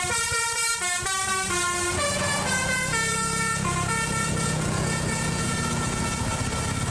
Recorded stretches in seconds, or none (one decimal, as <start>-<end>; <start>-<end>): 0.0-1.9; 6.0-6.9